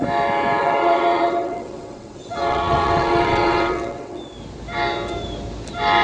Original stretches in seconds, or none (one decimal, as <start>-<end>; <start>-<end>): 0.0-0.6; 4.2-6.0